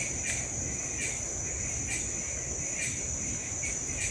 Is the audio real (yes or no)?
yes